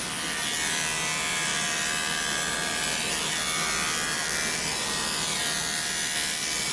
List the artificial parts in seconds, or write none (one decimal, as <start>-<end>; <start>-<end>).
none